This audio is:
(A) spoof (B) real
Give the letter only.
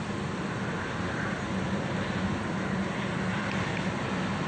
B